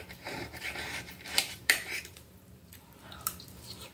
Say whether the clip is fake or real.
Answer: fake